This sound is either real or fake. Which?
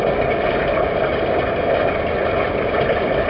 real